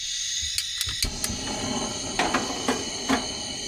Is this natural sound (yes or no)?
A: yes